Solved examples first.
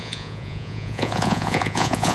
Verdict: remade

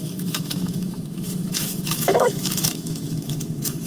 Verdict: remade